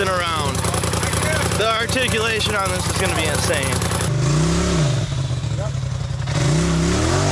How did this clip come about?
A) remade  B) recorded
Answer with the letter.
B